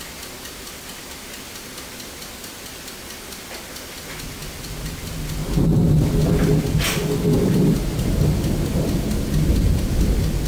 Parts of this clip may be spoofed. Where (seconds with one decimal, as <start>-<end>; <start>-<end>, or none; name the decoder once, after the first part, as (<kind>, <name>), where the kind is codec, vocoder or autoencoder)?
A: none